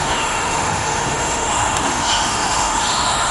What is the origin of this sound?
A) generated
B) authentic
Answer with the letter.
A